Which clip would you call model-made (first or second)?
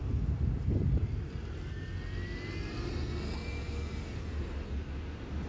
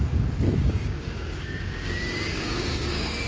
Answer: second